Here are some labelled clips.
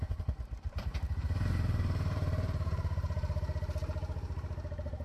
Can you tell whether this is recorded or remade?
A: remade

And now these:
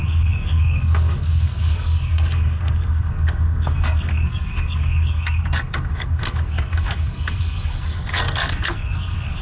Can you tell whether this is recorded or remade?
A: remade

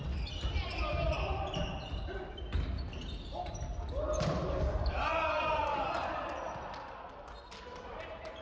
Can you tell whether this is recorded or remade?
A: recorded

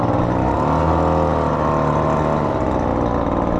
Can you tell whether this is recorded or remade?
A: recorded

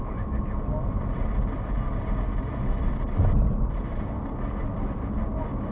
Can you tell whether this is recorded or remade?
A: recorded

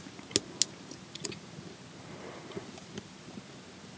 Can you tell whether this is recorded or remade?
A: recorded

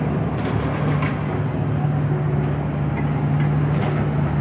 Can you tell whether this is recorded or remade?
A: recorded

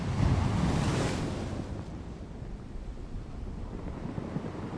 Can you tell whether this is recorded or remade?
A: recorded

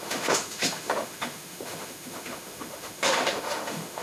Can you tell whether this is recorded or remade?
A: remade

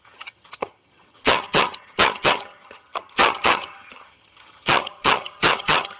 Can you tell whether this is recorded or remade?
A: remade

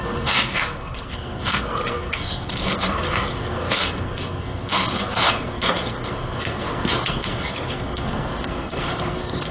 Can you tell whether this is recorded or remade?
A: remade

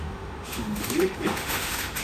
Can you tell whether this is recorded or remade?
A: remade